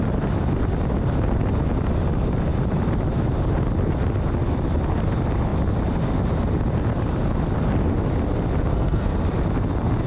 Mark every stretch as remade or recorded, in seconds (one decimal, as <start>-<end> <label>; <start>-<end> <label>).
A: 0.0-8.7 recorded; 8.7-9.2 remade; 9.2-10.1 recorded